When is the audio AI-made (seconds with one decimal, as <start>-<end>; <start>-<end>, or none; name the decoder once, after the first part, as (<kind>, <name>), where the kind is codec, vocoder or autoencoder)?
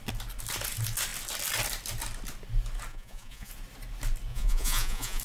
2.9-3.5 (vocoder, Vocos); 4.3-5.2